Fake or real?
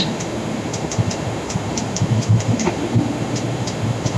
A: fake